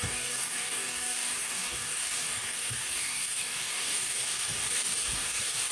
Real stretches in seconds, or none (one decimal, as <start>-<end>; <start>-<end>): none